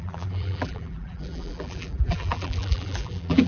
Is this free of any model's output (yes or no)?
no